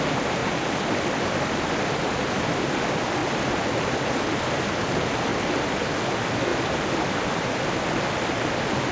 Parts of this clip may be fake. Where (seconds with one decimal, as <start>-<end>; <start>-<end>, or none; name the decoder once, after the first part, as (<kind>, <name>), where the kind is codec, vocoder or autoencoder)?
none

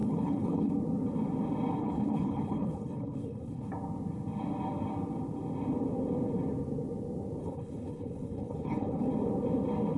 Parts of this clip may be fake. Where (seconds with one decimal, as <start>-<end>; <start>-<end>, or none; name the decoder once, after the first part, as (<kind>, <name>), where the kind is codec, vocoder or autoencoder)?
0.0-0.7 (codec, HILCodec); 1.8-3.7; 7.4-9.1

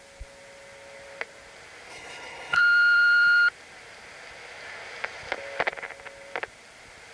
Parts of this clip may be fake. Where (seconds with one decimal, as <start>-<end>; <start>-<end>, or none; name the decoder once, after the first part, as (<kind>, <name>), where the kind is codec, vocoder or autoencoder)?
1.9-2.6 (codec, HILCodec)

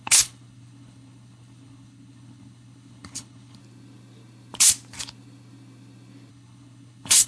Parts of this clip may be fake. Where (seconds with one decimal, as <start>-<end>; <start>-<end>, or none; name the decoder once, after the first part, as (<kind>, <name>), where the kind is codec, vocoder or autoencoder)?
0.0-3.6 (codec, HILCodec); 6.3-7.3

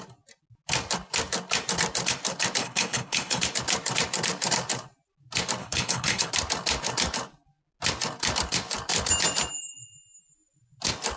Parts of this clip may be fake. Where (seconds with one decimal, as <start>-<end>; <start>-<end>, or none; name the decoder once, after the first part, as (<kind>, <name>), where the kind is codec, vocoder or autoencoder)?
2.6-3.4 (codec, HILCodec); 5.6-6.3

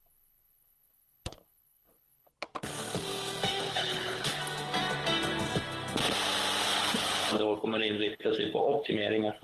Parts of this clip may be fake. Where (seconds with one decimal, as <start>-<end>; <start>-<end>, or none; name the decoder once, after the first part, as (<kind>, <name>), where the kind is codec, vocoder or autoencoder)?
0.0-2.3 (codec, HILCodec); 3.6-4.4; 6.6-9.4